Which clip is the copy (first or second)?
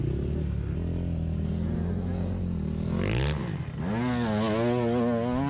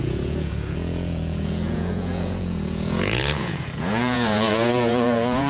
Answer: second